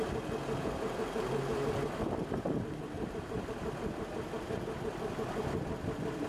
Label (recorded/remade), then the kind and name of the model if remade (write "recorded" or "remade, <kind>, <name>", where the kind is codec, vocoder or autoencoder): recorded